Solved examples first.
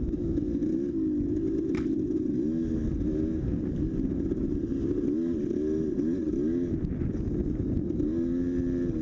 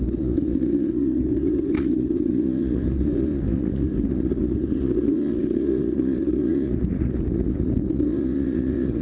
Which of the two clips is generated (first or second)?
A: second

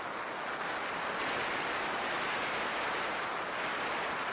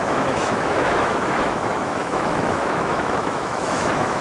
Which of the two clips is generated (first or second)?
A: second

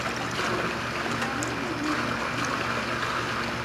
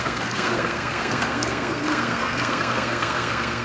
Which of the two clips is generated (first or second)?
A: second